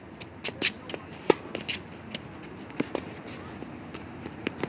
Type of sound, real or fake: real